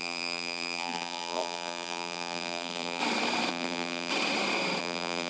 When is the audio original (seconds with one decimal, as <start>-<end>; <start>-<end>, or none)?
3.0-3.5; 4.1-4.8